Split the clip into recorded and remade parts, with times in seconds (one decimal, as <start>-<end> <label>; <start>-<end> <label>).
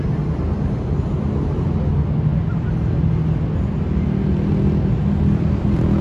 0.0-6.0 recorded